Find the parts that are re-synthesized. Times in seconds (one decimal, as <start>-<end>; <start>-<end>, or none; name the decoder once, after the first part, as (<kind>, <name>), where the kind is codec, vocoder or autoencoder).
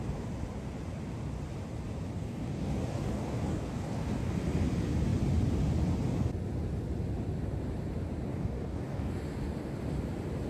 2.1-4.3 (codec, DAC); 8.3-9.1